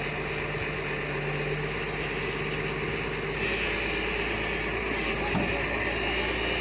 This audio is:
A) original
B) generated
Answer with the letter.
A